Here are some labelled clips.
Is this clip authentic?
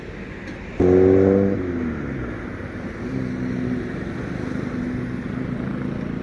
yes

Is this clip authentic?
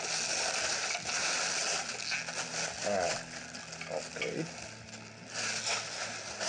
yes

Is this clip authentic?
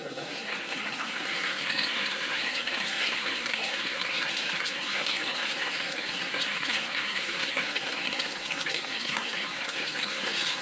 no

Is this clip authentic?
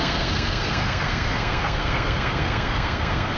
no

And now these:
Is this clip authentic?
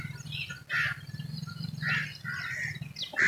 yes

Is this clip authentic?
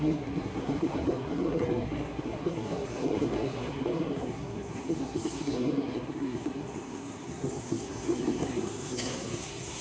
no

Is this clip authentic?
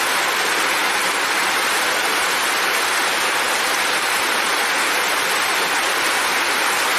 yes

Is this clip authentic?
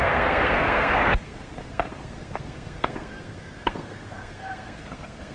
no